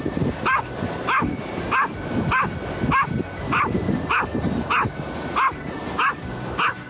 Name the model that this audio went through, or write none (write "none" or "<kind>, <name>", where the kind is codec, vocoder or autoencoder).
none